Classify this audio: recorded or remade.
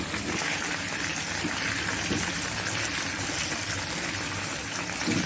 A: recorded